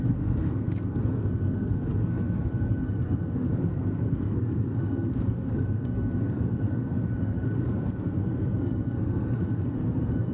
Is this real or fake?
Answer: fake